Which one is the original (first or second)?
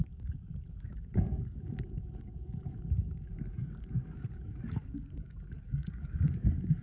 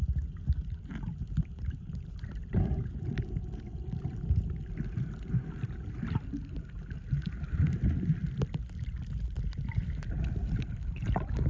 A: second